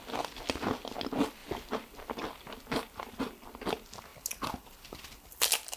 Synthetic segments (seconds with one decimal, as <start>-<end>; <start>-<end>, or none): none